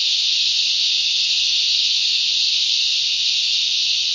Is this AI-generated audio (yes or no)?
yes